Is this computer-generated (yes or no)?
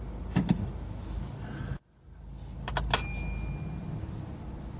no